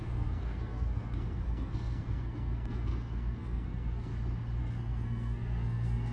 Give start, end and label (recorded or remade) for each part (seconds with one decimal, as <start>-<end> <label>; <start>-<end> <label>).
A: 0.0-4.1 remade; 4.1-4.6 recorded; 4.6-6.1 remade